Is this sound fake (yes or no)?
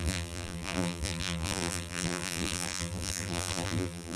yes